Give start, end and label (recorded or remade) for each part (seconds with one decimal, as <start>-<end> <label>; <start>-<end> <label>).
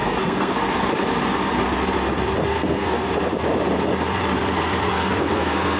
0.0-0.9 remade; 0.9-2.5 recorded; 2.5-3.1 remade; 3.1-4.9 recorded; 4.9-5.8 remade